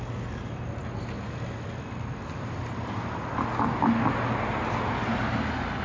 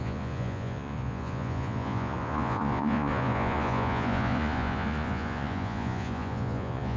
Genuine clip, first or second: first